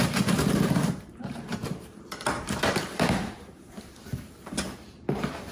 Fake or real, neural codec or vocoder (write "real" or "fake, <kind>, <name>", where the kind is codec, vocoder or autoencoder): fake, vocoder, BigVGAN v2